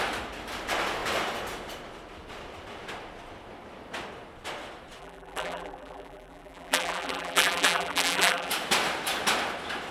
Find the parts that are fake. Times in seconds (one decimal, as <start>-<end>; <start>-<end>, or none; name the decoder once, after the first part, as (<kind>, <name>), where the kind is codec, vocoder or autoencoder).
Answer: 5.0-8.5 (vocoder, BigVGAN v2)